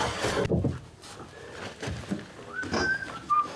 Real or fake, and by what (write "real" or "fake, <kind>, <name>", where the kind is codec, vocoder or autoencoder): real